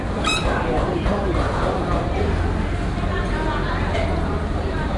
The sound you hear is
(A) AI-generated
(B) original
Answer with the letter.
B